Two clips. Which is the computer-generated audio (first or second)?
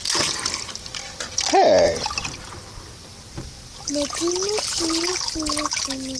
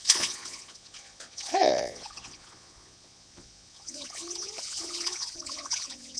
second